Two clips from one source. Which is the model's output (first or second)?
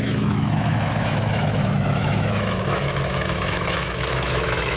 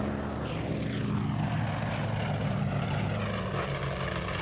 first